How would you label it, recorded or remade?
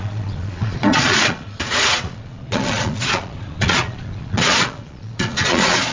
remade